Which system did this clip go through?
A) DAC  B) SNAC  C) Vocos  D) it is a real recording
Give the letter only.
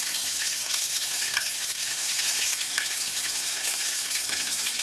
B